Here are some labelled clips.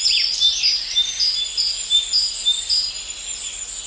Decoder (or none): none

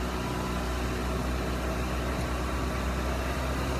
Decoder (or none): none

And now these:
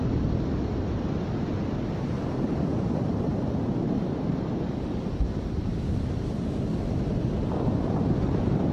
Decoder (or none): none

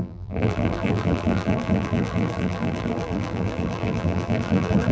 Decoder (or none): vocoder, BigVGAN v2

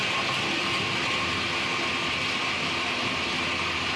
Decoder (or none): none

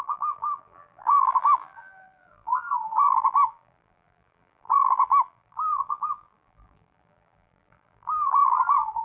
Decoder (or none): vocoder, BigVGAN v2